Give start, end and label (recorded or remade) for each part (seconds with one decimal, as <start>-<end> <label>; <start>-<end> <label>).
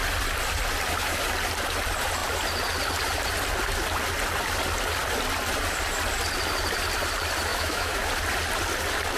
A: 0.0-7.5 recorded; 7.5-8.1 remade; 8.1-9.2 recorded